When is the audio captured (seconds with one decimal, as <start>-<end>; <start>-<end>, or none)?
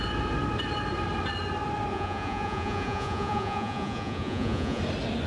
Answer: 0.0-1.9; 4.8-5.3